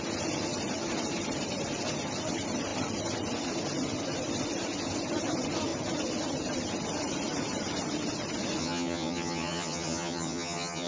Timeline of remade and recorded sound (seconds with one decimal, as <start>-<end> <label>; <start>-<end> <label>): 0.0-8.6 recorded; 8.6-10.9 remade